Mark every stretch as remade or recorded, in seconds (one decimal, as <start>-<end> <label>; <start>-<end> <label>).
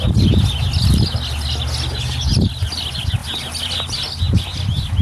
0.0-5.0 recorded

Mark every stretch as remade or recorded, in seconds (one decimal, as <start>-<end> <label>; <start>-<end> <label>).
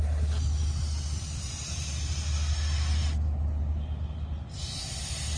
0.0-5.4 recorded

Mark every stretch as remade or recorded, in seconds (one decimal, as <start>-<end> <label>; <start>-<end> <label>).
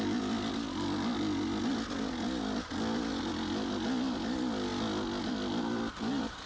0.0-6.5 recorded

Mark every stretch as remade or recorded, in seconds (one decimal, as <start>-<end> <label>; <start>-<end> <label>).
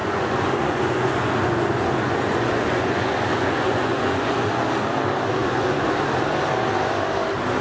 0.0-4.6 remade; 4.6-5.4 recorded; 5.4-5.9 remade; 5.9-7.6 recorded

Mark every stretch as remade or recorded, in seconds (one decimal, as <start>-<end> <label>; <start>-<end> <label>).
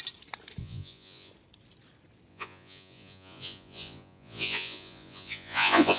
0.0-0.6 recorded; 0.6-1.3 remade; 1.3-2.3 recorded; 2.3-6.0 remade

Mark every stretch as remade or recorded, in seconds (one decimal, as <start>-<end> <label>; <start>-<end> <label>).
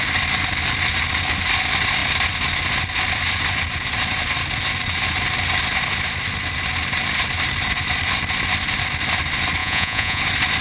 0.0-9.6 recorded; 9.6-10.2 remade; 10.2-10.6 recorded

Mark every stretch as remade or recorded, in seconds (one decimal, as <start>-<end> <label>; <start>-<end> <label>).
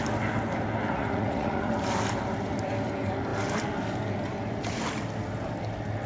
0.0-0.9 recorded; 0.9-1.7 remade; 1.7-6.1 recorded